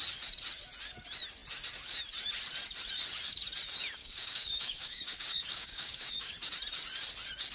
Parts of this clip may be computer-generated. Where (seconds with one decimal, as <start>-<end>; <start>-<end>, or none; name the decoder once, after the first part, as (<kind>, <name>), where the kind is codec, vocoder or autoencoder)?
4.0-6.3 (codec, DAC)